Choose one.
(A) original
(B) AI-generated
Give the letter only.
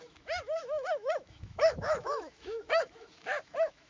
B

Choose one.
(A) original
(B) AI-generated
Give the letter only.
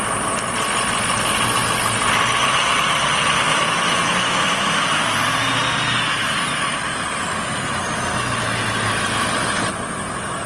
A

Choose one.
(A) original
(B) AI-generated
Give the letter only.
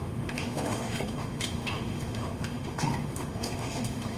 B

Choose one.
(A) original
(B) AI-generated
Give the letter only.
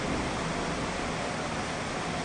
A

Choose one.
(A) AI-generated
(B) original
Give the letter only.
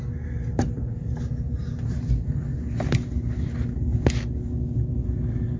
B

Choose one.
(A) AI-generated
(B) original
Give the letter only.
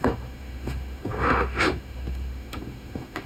A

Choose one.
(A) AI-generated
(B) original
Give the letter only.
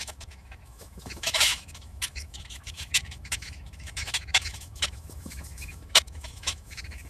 A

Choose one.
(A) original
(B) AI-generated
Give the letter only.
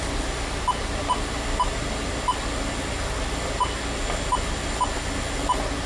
A